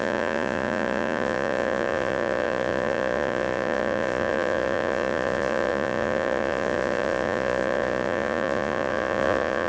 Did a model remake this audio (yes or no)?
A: yes